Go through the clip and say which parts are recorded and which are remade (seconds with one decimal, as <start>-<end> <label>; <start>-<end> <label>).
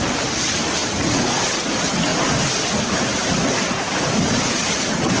0.0-0.8 recorded; 0.8-1.7 remade; 1.7-2.1 recorded; 2.1-5.2 remade